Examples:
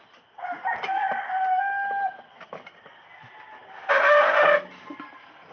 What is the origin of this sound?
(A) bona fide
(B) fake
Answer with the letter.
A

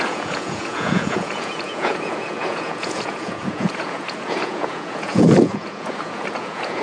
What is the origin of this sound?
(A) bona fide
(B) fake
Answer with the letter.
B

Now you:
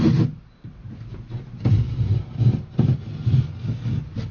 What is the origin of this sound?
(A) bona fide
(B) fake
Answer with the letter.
A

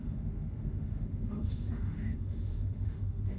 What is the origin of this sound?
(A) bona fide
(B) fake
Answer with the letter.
B